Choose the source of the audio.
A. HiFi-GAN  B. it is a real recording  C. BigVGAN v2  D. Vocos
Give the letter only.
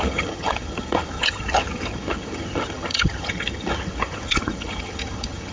A